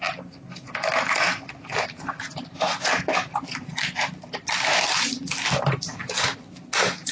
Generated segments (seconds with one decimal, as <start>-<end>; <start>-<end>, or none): none